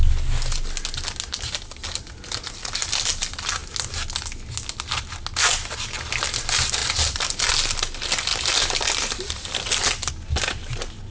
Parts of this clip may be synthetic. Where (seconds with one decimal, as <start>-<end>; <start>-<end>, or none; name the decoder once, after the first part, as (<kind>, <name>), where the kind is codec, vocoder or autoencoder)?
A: 6.8-7.4 (vocoder, BigVGAN v2); 8.3-10.1